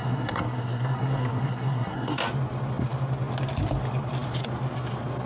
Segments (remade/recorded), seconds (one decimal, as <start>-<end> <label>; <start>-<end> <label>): 0.0-2.2 remade; 2.2-5.3 recorded